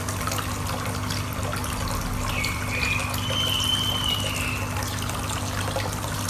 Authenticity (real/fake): real